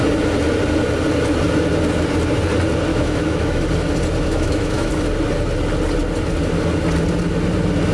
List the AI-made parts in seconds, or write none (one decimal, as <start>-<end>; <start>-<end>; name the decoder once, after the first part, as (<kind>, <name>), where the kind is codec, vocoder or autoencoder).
2.9-3.6 (autoencoder, DAC-VAE); 4.3-4.9